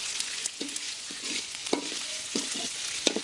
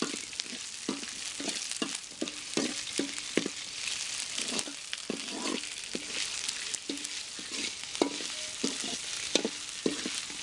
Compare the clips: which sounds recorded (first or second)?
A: second